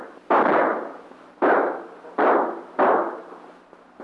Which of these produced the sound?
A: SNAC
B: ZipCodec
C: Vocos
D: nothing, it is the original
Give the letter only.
D